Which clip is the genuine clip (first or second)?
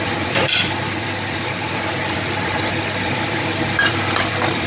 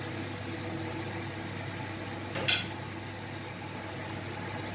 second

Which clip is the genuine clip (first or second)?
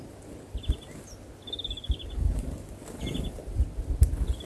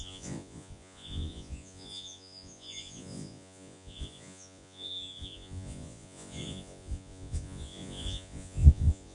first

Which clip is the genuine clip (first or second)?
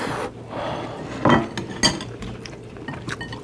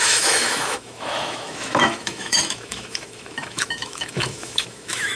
first